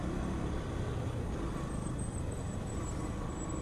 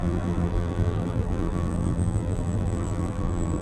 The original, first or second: first